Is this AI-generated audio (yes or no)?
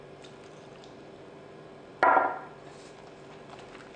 yes